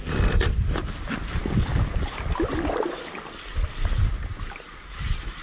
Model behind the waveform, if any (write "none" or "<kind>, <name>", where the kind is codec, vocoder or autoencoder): none